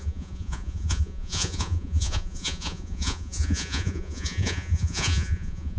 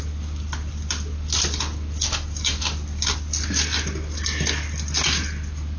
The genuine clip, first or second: second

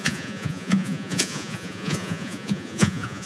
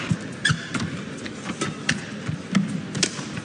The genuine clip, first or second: second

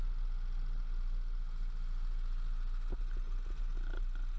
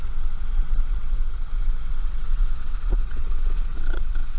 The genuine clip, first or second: first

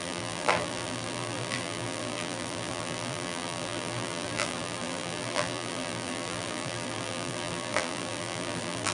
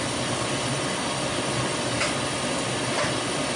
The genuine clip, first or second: second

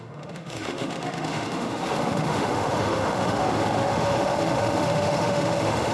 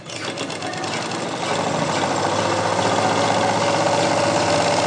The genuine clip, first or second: second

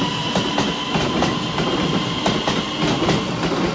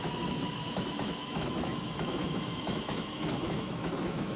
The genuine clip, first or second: first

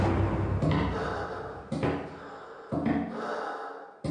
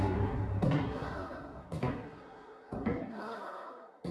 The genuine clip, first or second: first